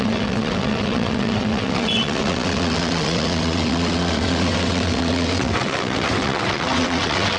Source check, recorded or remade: remade